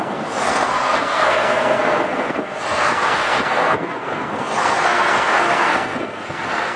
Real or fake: fake